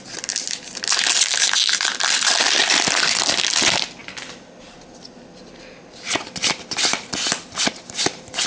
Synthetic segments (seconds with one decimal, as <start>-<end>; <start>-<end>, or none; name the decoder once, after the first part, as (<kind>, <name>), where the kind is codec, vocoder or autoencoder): none